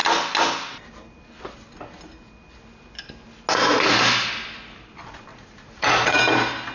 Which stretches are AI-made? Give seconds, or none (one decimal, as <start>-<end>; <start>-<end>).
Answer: 5.3-6.2